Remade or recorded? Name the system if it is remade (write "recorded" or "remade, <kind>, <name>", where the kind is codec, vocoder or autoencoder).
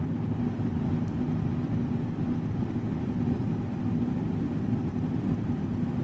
recorded